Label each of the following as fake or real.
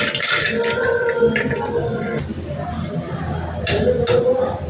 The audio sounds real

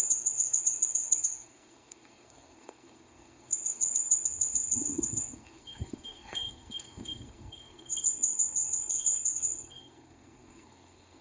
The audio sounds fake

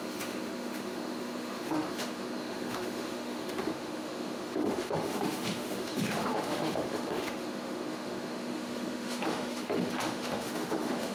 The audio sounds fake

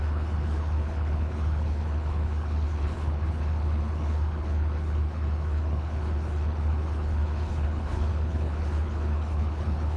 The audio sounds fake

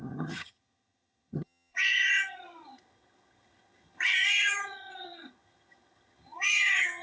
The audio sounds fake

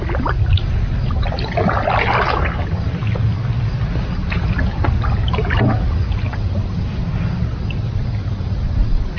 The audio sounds real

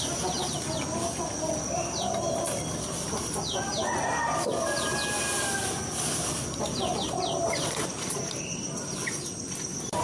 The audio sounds real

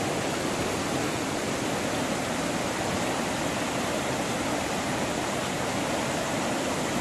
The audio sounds real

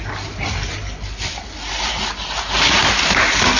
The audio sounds real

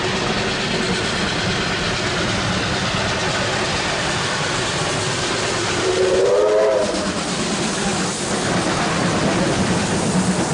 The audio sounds real